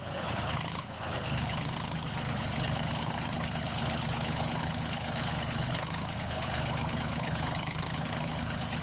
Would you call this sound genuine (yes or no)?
no